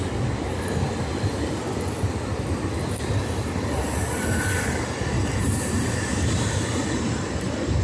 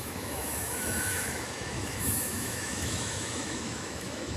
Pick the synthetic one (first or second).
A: second